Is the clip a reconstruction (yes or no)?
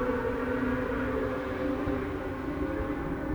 no